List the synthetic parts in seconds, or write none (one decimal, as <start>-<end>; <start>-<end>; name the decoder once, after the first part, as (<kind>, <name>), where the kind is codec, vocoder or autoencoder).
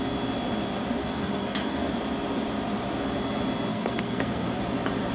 1.0-1.9 (codec, SNAC); 3.7-4.6